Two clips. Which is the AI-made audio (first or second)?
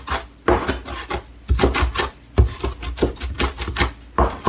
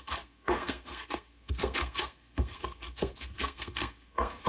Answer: second